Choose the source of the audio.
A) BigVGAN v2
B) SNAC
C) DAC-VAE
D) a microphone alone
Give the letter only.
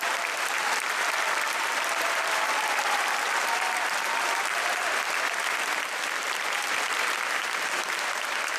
A